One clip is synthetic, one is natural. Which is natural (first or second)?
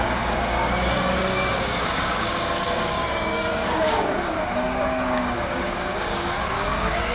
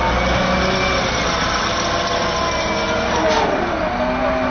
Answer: second